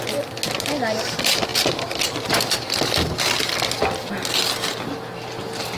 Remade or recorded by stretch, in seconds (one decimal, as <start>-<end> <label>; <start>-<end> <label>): 0.0-5.8 recorded